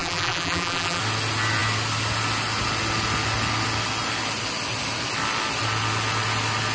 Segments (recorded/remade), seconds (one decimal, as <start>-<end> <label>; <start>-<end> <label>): 0.0-1.0 remade; 1.0-6.7 recorded